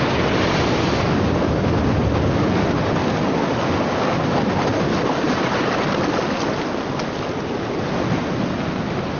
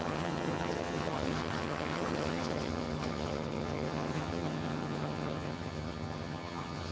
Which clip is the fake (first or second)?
second